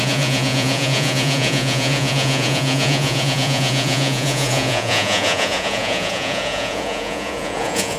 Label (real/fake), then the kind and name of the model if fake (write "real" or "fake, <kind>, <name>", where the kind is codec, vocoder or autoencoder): fake, vocoder, Vocos